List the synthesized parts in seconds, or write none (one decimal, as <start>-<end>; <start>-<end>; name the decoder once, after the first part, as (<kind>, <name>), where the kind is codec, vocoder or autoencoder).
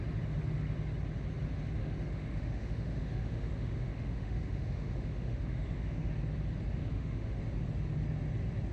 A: 1.8-6.1 (autoencoder, DAC-VAE); 6.8-7.4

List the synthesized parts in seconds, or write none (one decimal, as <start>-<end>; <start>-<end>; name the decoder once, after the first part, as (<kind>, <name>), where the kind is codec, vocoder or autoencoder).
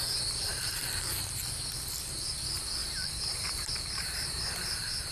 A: 0.5-1.6 (vocoder, BigVGAN v2); 2.8-4.4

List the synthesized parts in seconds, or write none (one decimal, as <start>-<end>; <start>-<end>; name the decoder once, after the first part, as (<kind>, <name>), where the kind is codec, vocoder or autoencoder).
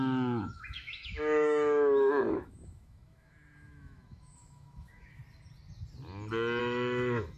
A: 0.0-5.2 (autoencoder, DAC-VAE); 6.6-7.4